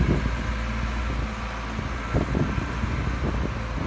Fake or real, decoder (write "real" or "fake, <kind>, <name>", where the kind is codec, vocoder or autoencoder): real